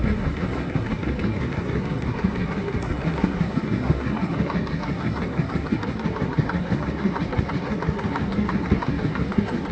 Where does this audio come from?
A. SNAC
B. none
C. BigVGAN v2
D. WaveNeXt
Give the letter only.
A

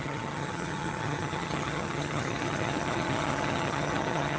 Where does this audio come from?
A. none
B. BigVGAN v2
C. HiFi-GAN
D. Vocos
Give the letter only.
C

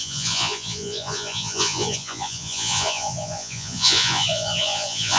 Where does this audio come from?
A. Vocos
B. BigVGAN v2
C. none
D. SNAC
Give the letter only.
A